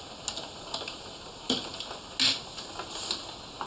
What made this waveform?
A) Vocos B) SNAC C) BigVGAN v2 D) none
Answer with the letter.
D